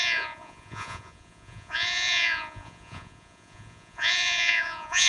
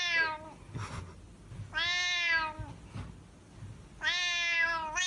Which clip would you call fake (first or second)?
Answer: first